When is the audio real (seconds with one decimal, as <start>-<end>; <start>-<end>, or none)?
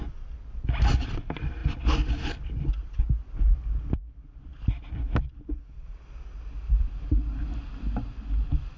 0.0-8.8